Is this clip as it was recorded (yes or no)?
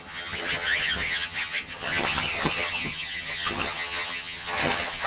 no